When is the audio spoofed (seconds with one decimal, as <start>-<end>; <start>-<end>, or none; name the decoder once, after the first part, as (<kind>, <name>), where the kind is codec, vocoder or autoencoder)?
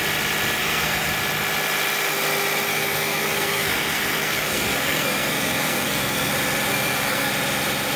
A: 0.6-1.1 (codec, SNAC); 2.7-6.3; 6.7-7.3